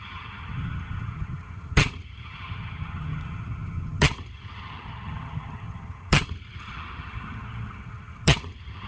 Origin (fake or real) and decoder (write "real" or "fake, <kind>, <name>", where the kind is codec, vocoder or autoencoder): fake, vocoder, HiFi-GAN